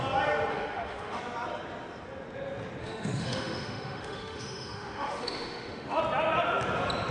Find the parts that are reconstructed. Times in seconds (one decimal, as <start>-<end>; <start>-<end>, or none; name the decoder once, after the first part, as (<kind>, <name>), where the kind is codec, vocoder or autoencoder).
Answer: 0.5-1.2 (autoencoder, DAC-VAE); 2.8-6.0